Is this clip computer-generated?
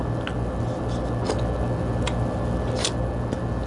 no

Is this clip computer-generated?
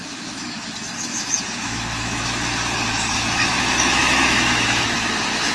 yes